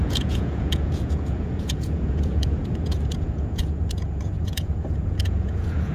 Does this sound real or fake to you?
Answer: fake